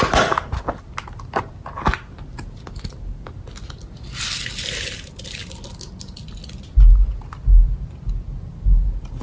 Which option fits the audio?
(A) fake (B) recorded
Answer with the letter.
B